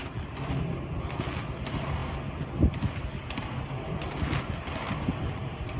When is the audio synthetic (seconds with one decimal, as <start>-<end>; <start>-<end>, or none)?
2.0-5.8